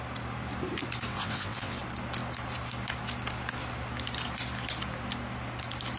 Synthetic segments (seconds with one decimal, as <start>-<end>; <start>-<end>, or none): 1.1-1.8